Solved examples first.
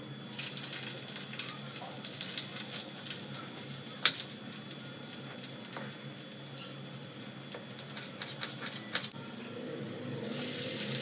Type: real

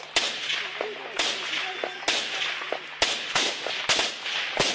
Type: real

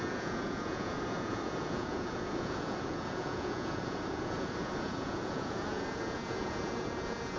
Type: fake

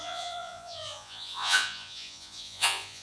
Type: fake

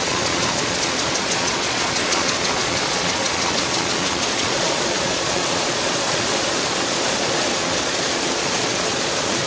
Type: fake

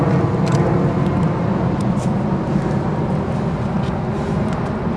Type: real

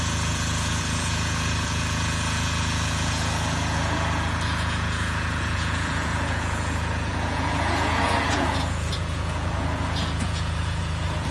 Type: fake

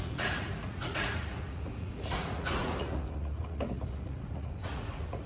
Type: fake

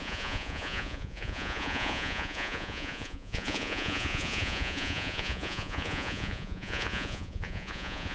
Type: fake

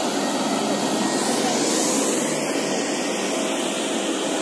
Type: real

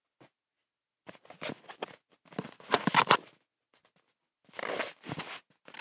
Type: real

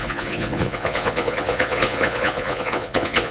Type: fake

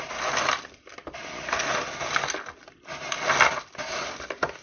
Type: real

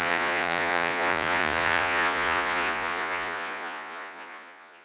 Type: fake